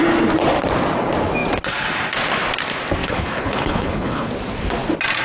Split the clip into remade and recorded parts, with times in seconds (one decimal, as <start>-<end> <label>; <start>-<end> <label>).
0.0-3.0 recorded; 3.0-4.3 remade; 4.3-5.2 recorded